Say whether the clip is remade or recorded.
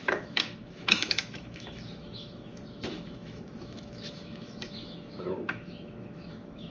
remade